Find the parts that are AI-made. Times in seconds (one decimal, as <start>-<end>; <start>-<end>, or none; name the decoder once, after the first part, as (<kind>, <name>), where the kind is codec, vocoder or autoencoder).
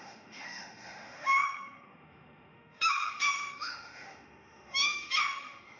0.0-5.8 (autoencoder, DAC-VAE)